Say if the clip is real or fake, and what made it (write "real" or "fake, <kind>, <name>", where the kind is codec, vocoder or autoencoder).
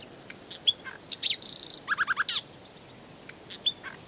real